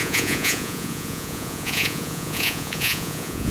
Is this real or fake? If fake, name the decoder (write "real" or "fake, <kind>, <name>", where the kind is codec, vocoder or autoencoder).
fake, vocoder, Vocos